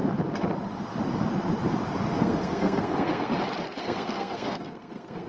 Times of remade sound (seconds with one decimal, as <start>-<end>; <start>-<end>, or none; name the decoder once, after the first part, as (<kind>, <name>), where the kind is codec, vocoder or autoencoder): 2.2-3.3 (codec, SNAC); 3.8-5.3

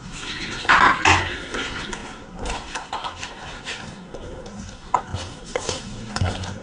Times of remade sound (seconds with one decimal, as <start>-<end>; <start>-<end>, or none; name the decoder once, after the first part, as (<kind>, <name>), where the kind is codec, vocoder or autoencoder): 0.0-0.7 (codec, SNAC); 1.2-6.6